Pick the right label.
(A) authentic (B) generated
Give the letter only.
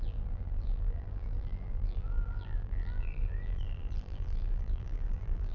B